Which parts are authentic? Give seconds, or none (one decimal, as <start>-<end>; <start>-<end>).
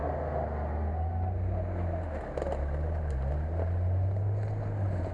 0.0-5.1